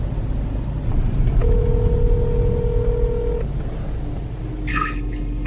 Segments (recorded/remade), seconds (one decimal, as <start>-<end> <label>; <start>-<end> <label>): 0.0-4.7 recorded; 4.7-5.5 remade